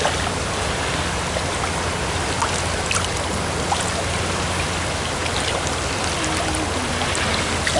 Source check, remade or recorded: recorded